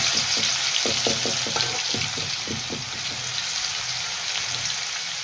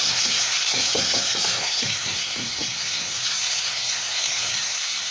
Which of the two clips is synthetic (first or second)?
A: second